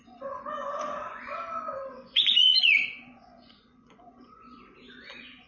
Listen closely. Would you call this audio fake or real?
fake